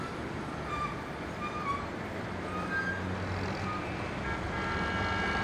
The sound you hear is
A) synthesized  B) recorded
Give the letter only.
B